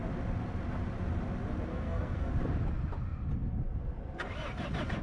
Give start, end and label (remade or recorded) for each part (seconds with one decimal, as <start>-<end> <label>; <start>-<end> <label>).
0.0-1.7 recorded; 1.7-2.3 remade; 2.3-5.0 recorded